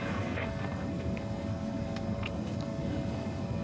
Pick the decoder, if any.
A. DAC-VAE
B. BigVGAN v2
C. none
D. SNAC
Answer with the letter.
D